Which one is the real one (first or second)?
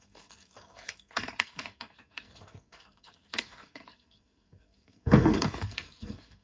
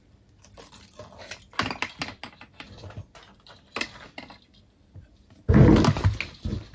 second